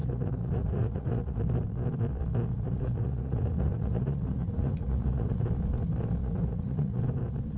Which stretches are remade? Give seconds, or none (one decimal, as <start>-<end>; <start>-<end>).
0.0-1.4; 2.5-5.4; 6.2-7.0